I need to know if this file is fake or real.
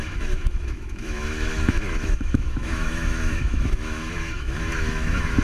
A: fake